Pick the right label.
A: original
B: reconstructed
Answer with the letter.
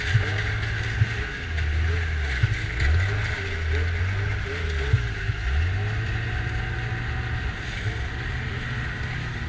A